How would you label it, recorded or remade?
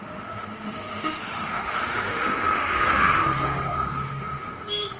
remade